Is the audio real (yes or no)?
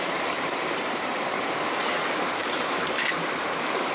no